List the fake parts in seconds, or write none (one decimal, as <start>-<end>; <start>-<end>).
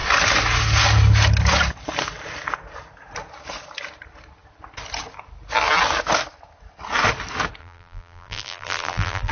7.6-9.3